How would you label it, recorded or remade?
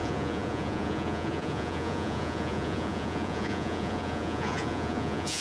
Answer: remade